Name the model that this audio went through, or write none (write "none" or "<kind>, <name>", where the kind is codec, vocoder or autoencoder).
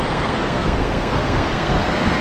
codec, SNAC